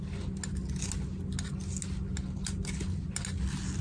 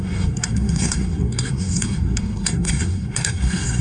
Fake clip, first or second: second